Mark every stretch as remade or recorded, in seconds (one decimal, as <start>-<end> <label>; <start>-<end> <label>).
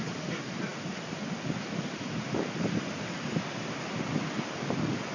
0.0-5.1 recorded